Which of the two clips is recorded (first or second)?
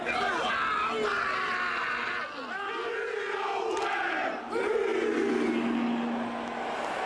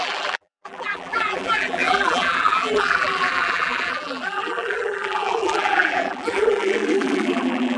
first